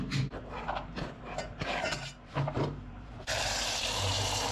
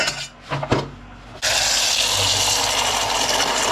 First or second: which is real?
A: second